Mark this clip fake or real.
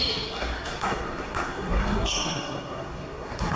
fake